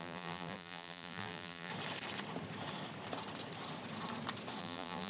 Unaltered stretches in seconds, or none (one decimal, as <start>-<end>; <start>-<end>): 1.7-4.6